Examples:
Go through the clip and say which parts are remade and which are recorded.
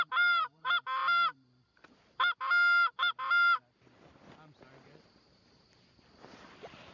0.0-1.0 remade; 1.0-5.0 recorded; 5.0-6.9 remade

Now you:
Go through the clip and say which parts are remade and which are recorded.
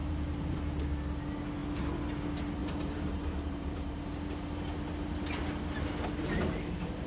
0.0-0.8 remade; 0.8-2.6 recorded; 2.6-4.1 remade; 4.1-7.1 recorded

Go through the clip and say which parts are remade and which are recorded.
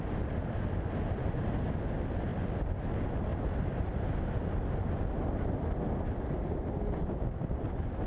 0.0-2.3 recorded; 2.3-2.9 remade; 2.9-3.3 recorded; 3.3-5.0 remade; 5.0-8.1 recorded